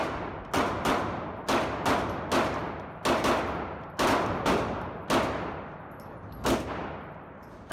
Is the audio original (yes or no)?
yes